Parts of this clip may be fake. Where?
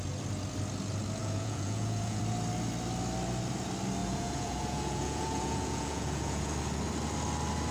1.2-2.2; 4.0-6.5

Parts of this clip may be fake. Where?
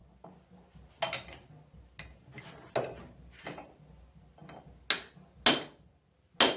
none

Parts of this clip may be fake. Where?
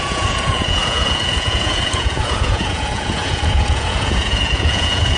0.0-5.2